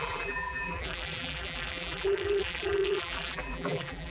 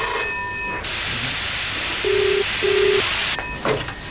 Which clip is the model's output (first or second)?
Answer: first